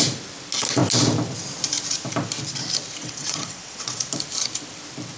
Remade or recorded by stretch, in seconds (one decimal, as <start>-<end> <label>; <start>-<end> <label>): 0.0-3.0 recorded; 3.0-4.0 remade; 4.0-5.2 recorded